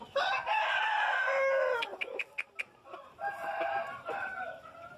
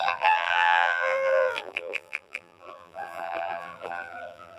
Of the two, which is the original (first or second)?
first